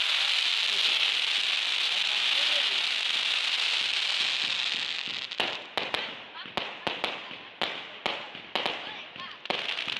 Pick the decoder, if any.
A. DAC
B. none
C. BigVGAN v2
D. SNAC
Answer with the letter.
B